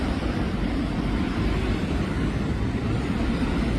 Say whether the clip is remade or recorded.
remade